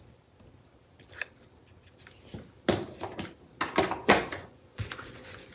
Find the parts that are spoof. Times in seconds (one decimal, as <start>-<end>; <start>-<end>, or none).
4.0-5.5